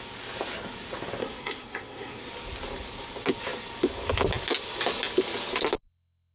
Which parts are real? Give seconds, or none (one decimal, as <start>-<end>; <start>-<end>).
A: 0.0-1.2; 2.2-6.3

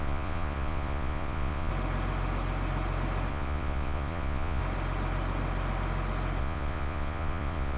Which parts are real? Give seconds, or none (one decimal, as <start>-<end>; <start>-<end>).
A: 1.7-3.3; 4.6-6.4

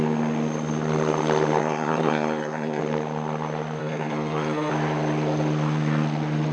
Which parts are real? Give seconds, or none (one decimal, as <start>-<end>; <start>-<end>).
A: 0.0-1.6; 2.8-3.8; 4.7-6.5

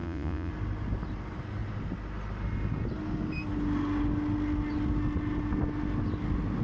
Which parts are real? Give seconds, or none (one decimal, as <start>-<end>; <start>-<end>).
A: 0.5-6.6

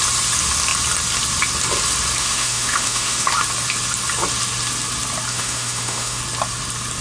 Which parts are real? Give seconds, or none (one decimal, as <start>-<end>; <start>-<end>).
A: 0.0-2.2; 3.3-5.3; 6.2-7.0

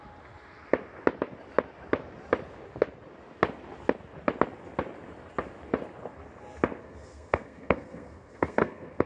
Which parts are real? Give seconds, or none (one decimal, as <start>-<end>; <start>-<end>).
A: 0.0-6.8

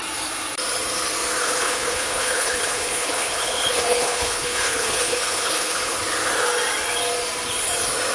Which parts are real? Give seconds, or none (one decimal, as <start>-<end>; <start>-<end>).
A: 0.0-1.4; 6.0-8.1

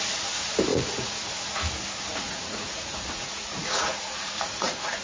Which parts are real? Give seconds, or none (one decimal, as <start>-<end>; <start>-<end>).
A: 0.0-0.7; 1.7-2.1